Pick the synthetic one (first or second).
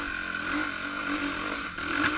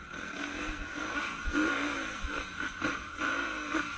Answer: second